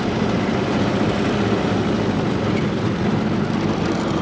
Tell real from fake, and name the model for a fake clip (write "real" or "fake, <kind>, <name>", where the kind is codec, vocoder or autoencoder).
real